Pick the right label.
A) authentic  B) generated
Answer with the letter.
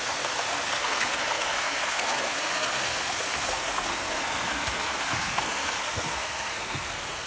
B